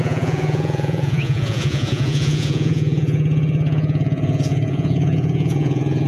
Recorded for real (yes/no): no